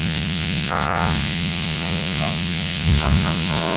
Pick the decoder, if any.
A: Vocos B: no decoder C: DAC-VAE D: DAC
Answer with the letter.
A